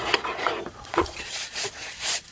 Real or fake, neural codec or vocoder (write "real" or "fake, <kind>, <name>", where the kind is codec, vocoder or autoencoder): fake, vocoder, Vocos